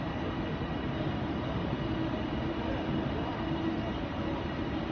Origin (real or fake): fake